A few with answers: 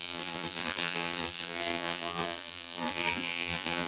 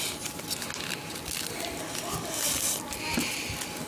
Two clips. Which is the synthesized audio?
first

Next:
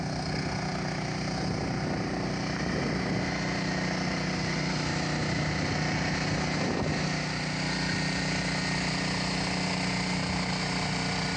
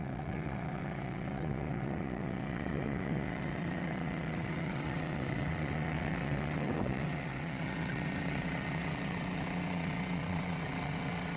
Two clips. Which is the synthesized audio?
second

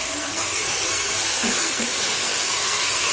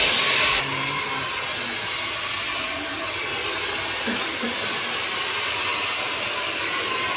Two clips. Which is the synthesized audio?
first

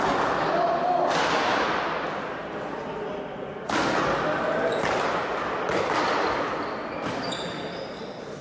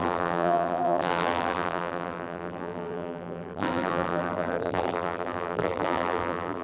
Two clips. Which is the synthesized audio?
second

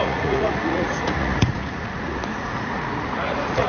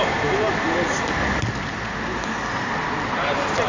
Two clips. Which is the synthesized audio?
first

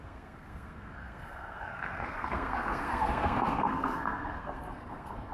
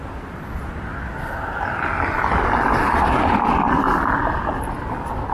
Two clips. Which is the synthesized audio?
first